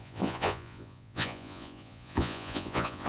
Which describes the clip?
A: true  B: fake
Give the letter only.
B